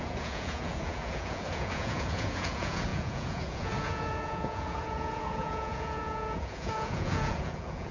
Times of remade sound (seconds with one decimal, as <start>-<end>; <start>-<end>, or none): 0.0-7.9

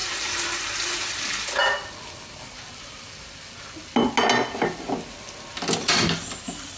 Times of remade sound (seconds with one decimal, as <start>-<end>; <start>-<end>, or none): 0.0-1.2

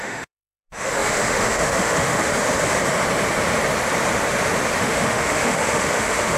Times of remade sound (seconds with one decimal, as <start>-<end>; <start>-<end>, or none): 0.0-2.3; 4.8-6.4

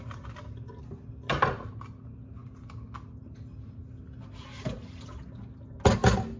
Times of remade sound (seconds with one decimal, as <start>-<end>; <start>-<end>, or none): none

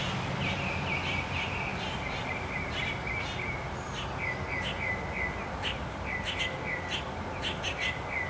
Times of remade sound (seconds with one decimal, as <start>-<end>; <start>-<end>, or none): none

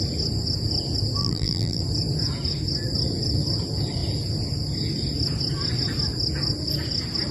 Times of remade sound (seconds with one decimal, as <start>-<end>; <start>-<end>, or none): 1.2-1.8

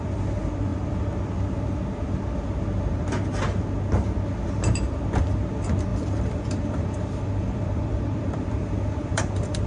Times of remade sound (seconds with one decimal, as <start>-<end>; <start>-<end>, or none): 5.9-9.7